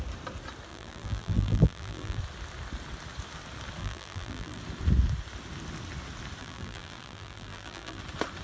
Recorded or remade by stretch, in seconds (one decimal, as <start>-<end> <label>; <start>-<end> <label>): 0.0-0.7 recorded; 0.7-2.2 remade; 2.2-3.8 recorded; 3.8-4.6 remade; 4.6-6.4 recorded; 6.4-8.0 remade; 8.0-8.4 recorded